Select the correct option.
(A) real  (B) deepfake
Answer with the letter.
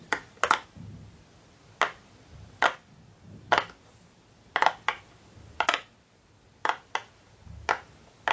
A